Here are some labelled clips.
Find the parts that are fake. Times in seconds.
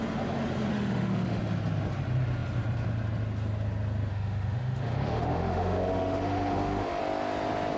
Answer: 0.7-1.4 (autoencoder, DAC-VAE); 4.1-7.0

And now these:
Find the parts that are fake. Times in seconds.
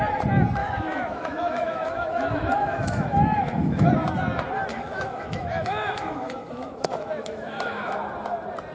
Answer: 0.6-3.9 (autoencoder, DAC-VAE); 4.7-7.9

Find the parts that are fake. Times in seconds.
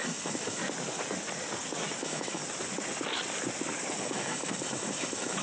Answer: 0.0-0.6 (autoencoder, DAC-VAE); 2.0-2.4; 4.0-5.4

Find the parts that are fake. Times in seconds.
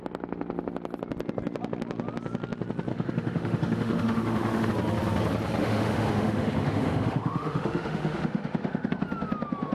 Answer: 2.9-4.7 (autoencoder, DAC-VAE); 5.6-8.9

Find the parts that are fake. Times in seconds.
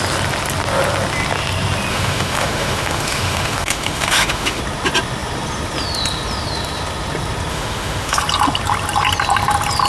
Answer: 1.9-4.6 (autoencoder, DAC-VAE); 7.5-8.2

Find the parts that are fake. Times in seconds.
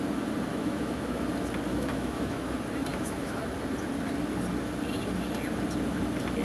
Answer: 0.5-1.2 (autoencoder, DAC-VAE); 1.7-2.5; 2.9-3.4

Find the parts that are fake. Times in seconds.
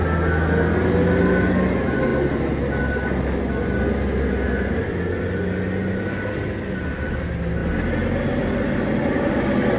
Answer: none